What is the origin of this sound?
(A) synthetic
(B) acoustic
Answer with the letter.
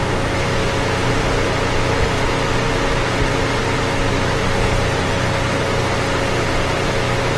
B